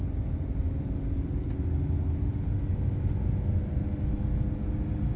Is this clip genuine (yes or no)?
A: yes